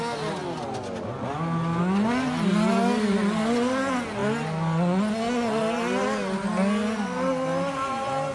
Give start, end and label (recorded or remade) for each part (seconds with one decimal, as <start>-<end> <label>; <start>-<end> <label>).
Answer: 0.0-8.3 recorded